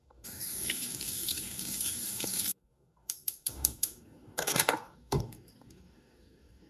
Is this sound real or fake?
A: fake